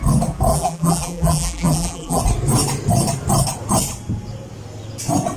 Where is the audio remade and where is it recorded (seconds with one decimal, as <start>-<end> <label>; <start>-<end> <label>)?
0.0-0.5 recorded; 0.5-2.2 remade; 2.2-5.4 recorded